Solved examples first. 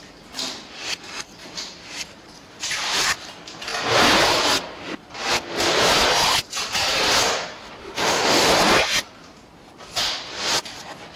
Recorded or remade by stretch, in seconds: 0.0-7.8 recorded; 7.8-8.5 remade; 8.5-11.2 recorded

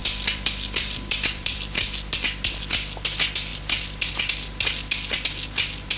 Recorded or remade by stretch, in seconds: 0.0-1.8 remade; 1.8-3.5 recorded; 3.5-4.1 remade; 4.1-6.0 recorded

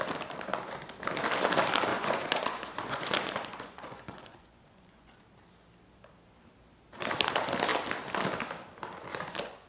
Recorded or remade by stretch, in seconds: 0.0-1.9 recorded; 1.9-5.2 remade; 5.2-9.1 recorded; 9.1-9.7 remade

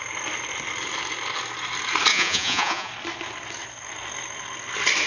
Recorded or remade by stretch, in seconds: 0.0-2.1 recorded; 2.1-2.9 remade; 2.9-5.1 recorded